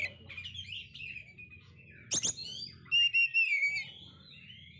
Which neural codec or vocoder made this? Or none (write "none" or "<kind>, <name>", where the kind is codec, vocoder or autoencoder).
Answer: none